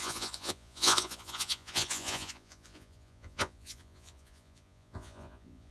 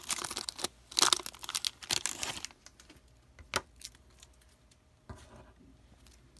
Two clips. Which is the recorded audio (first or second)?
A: second